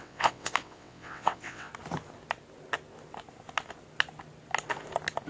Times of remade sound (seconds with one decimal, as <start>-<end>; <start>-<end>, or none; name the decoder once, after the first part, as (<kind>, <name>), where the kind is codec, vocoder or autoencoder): 0.0-1.7 (vocoder, WaveNeXt)